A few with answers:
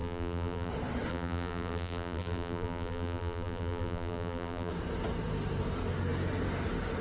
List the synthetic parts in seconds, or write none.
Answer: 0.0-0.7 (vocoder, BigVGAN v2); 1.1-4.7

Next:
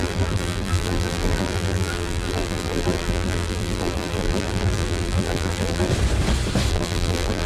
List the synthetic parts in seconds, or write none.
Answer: 0.0-5.9 (vocoder, BigVGAN v2); 6.7-7.5